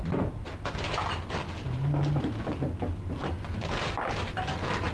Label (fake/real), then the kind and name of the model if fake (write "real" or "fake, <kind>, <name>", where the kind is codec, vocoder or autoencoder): real